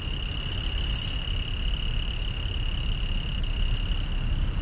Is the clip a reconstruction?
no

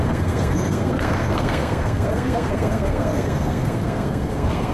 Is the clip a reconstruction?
yes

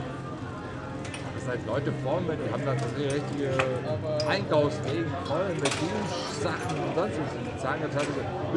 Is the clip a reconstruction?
no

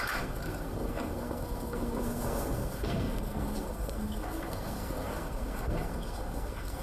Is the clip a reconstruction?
yes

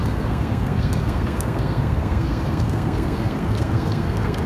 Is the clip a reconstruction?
yes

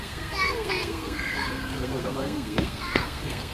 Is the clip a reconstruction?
yes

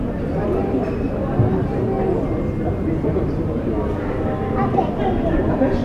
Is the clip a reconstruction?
no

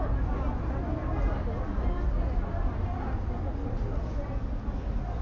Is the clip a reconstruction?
no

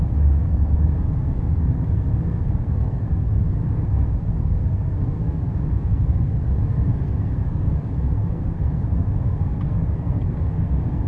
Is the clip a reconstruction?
yes